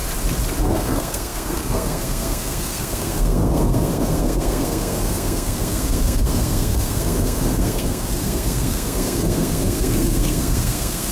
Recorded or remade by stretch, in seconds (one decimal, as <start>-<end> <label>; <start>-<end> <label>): 0.0-0.6 recorded; 0.6-11.1 remade